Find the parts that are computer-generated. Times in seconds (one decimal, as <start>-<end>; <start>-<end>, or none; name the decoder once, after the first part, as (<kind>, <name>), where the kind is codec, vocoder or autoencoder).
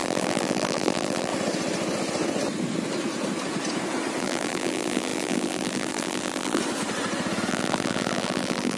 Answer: 0.0-1.3 (vocoder, BigVGAN v2); 4.2-6.6; 7.5-8.8